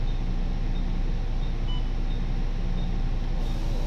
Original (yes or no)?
yes